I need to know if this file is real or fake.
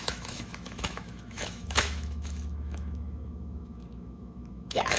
fake